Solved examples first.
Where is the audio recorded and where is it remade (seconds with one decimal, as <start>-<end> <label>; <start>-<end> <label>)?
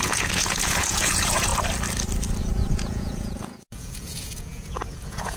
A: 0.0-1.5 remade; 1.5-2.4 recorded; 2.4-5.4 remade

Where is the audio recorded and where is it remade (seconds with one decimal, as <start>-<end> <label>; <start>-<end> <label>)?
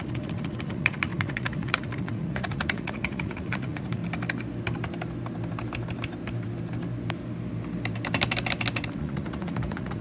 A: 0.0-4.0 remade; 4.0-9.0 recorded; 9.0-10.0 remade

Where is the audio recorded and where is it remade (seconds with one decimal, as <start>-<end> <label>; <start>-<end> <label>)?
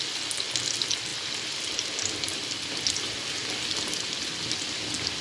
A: 0.0-5.2 recorded